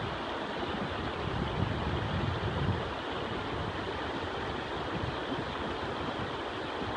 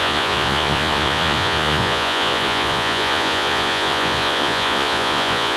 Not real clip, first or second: second